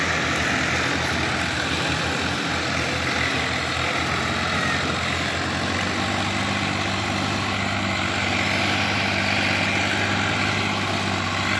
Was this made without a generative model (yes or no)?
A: yes